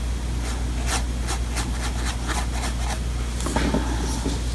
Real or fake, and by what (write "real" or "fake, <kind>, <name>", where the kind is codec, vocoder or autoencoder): real